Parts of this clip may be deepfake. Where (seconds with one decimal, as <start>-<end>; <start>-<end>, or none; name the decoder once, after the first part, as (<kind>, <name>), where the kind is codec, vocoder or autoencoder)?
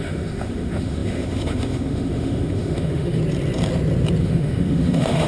0.0-3.2 (autoencoder, DAC-VAE); 4.2-5.3